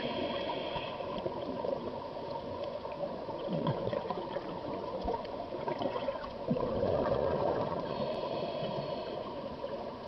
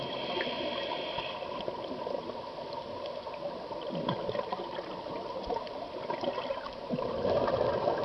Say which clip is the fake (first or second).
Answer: first